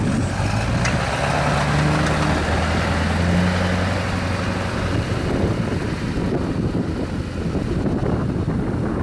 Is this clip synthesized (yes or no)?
no